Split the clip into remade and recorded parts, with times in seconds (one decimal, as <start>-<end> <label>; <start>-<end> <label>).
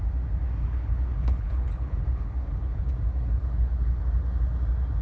0.0-0.6 recorded; 0.6-2.8 remade; 2.8-3.4 recorded; 3.4-4.0 remade; 4.0-5.0 recorded